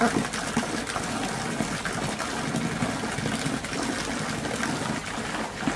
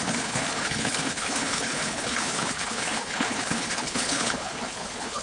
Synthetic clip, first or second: second